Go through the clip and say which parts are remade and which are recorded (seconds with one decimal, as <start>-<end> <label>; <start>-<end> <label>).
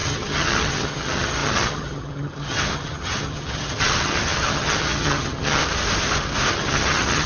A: 0.0-5.6 remade; 5.6-6.5 recorded; 6.5-7.3 remade